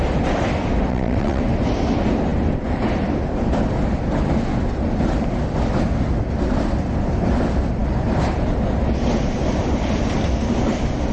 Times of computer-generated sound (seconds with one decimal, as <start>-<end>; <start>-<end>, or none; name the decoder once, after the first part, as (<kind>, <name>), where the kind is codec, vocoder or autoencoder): 0.9-1.4 (vocoder, WaveNeXt)